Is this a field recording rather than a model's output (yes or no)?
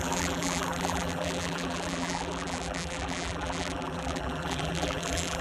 no